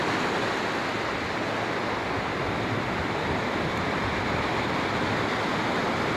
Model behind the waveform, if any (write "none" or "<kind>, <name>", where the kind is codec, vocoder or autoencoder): none